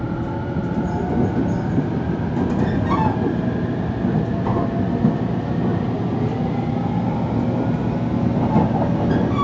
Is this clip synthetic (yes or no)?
no